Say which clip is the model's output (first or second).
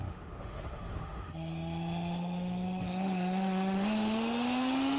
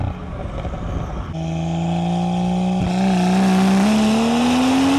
first